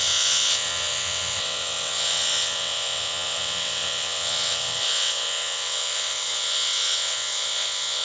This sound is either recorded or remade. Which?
remade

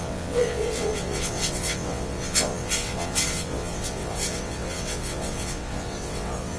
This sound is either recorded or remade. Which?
remade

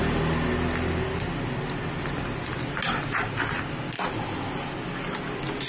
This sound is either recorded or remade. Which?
recorded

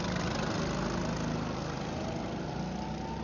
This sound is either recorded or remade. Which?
recorded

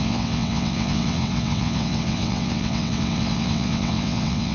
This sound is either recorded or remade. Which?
remade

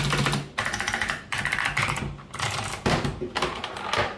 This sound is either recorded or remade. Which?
recorded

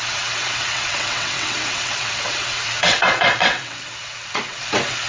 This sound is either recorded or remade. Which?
remade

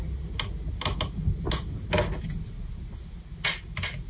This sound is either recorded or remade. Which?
recorded